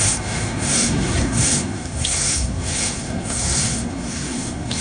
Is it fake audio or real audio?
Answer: fake